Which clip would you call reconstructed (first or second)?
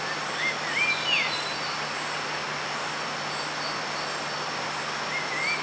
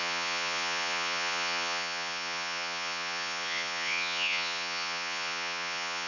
second